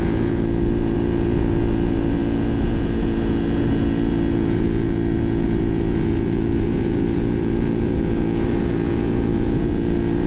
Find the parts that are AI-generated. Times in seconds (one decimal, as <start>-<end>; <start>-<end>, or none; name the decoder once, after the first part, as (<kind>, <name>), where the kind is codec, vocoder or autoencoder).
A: 0.0-10.3 (vocoder, Vocos)